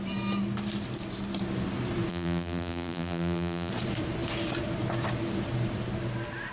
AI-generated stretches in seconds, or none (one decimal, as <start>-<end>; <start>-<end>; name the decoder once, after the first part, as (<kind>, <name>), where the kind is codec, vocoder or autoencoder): 2.1-3.7 (vocoder, BigVGAN v2)